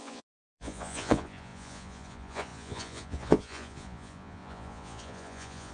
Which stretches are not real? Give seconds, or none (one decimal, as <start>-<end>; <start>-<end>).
0.0-5.7